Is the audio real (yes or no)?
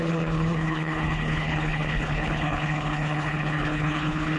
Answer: no